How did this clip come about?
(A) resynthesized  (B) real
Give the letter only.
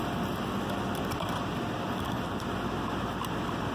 B